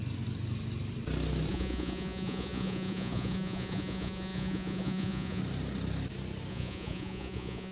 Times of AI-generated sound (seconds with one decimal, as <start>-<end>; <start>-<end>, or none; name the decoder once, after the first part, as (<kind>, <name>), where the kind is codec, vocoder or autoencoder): 1.5-5.4 (vocoder, Vocos); 6.5-7.7